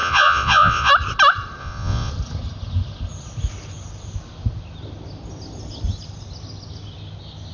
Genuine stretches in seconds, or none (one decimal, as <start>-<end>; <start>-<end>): 0.9-1.6; 2.1-7.5

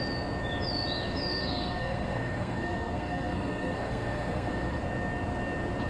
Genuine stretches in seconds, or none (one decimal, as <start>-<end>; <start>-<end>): 0.0-1.3; 4.8-5.9